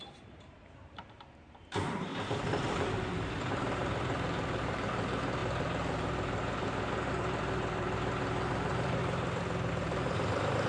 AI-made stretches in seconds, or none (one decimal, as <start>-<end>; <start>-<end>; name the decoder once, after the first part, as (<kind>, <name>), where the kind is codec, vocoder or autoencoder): 0.0-2.1 (vocoder, BigVGAN v2); 2.7-9.0; 9.7-10.7